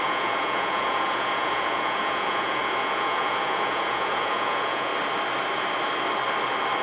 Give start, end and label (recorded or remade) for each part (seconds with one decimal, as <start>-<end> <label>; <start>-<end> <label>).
0.0-4.9 remade; 4.9-6.8 recorded